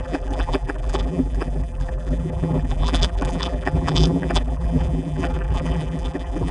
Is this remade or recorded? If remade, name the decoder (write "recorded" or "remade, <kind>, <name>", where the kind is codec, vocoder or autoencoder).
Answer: remade, vocoder, BigVGAN v2